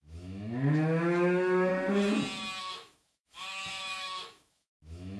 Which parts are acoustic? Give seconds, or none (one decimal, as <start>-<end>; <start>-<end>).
1.7-2.6